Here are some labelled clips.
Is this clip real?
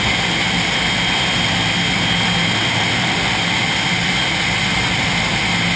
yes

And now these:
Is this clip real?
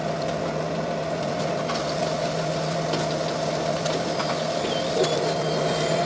yes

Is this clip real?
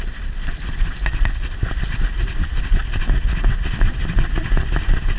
yes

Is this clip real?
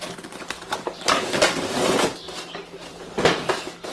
yes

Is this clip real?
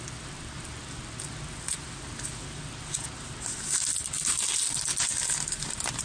yes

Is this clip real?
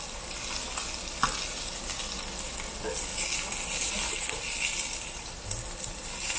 yes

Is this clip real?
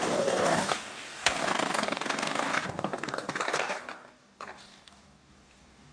no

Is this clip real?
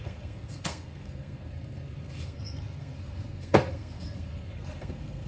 no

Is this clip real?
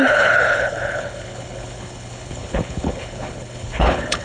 no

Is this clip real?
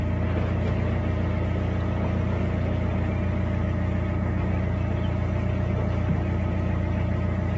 yes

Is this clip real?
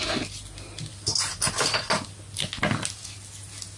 yes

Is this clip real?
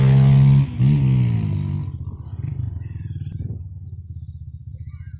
yes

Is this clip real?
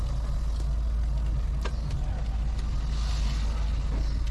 yes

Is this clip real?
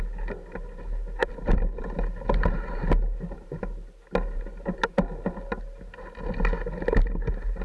yes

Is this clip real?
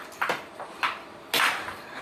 yes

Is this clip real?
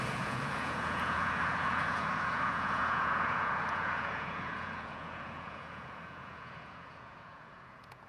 no